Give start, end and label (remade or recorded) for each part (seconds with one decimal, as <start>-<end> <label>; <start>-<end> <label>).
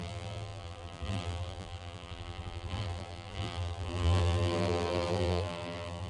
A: 0.0-6.1 remade